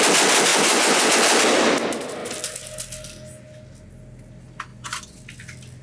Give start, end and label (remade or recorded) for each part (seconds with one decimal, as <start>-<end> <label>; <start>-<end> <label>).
0.0-0.5 recorded; 0.5-1.1 remade; 1.1-4.7 recorded; 4.7-5.2 remade; 5.2-5.8 recorded